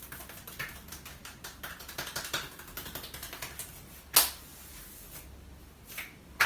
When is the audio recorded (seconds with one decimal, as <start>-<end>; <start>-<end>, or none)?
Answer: 0.0-6.5